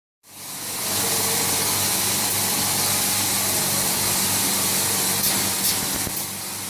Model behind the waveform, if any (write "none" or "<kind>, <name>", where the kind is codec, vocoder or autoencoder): none